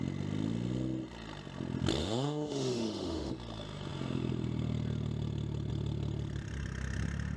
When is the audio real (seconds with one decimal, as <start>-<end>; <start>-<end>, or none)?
0.0-2.0; 3.3-7.4